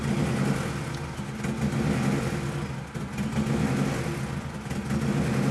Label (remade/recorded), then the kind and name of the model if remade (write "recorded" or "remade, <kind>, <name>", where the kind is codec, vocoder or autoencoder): recorded